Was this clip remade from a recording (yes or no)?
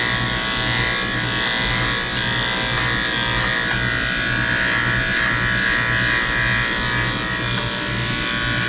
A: no